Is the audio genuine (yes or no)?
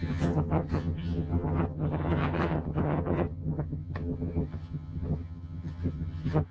no